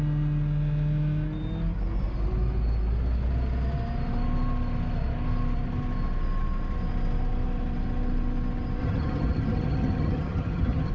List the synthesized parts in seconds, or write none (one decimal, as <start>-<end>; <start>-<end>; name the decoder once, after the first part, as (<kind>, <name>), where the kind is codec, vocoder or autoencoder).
8.8-10.9 (vocoder, HiFi-GAN)